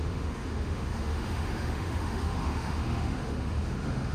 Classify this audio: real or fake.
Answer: fake